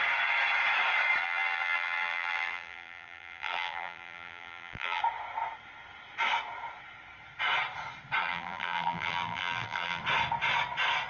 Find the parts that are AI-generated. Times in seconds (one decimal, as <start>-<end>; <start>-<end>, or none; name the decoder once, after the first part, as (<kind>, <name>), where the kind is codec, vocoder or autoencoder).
1.2-5.0 (vocoder, BigVGAN v2); 8.2-10.0